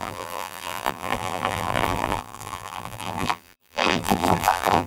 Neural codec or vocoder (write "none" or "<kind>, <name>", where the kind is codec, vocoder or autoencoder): vocoder, BigVGAN v2